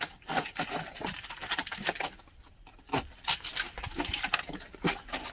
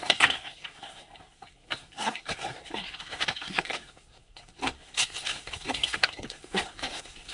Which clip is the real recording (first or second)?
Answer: first